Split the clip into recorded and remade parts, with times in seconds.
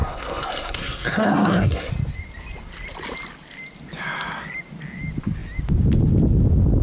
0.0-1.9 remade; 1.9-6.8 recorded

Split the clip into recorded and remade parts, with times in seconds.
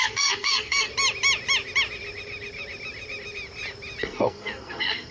0.0-0.9 remade; 0.9-4.0 recorded; 4.0-5.1 remade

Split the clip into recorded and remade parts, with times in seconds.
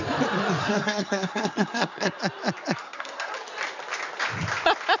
0.0-0.6 recorded; 0.6-2.2 remade; 2.2-2.8 recorded; 2.8-3.3 remade; 3.3-5.0 recorded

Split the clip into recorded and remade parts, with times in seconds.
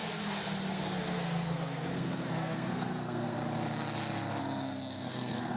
0.0-0.7 recorded; 0.7-3.4 remade; 3.4-4.4 recorded; 4.4-5.6 remade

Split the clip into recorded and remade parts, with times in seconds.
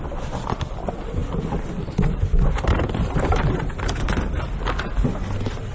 0.0-5.7 recorded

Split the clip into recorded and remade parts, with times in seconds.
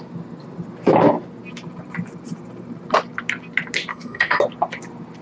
0.0-3.9 recorded; 3.9-4.4 remade; 4.4-5.2 recorded